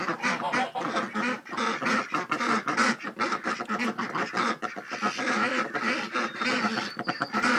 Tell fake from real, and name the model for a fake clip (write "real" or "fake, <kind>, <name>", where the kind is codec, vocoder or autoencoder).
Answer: real